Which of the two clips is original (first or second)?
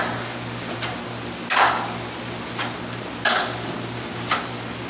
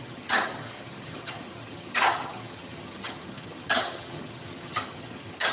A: first